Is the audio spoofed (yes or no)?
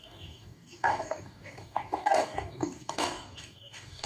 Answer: yes